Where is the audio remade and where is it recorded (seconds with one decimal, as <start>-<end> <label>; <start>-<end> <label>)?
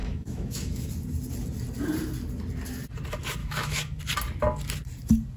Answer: 0.0-0.9 remade; 0.9-3.4 recorded; 3.4-4.0 remade; 4.0-5.4 recorded